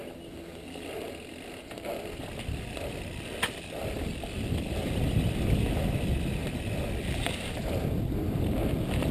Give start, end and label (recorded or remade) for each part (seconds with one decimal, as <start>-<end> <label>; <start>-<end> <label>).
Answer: 0.0-9.1 recorded